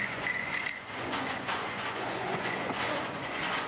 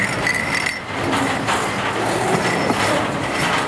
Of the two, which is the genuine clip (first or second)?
second